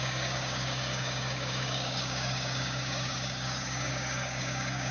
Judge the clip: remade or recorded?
remade